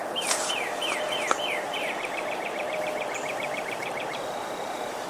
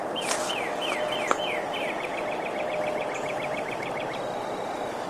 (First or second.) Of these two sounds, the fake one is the first